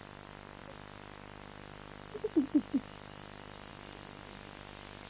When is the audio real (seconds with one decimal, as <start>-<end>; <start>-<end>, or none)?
0.0-5.1